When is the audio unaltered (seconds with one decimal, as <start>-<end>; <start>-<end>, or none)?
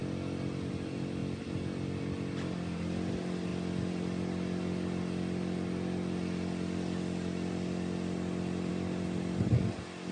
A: 0.0-10.1